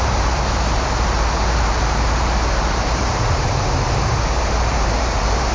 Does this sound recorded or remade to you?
remade